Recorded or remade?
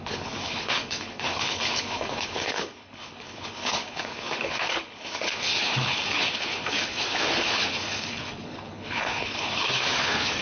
remade